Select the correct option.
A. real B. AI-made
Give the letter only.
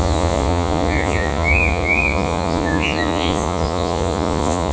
B